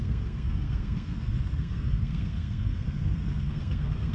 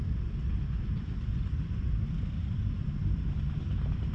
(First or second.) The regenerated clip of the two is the first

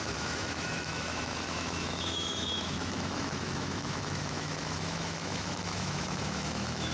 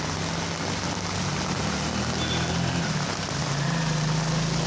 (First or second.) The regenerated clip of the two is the first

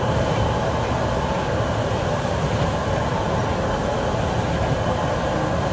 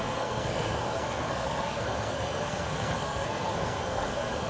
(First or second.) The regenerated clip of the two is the second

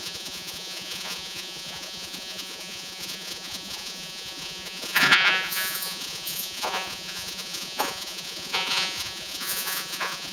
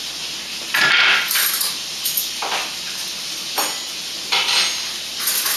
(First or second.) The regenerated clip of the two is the first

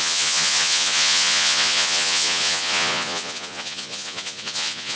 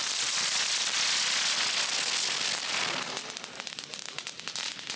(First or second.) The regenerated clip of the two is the first